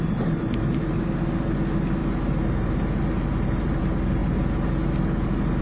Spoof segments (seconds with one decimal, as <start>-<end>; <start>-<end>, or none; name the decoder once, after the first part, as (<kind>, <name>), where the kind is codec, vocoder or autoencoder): none